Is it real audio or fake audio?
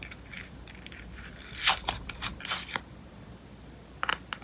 real